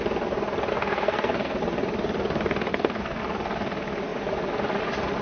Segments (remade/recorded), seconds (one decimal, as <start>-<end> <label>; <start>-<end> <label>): 0.0-0.7 recorded; 0.7-1.6 remade; 1.6-2.7 recorded; 2.7-3.2 remade; 3.2-5.2 recorded